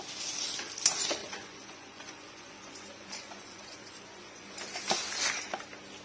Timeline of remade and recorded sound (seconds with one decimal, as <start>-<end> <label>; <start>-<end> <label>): 0.0-1.2 recorded; 1.2-4.5 remade; 4.5-6.0 recorded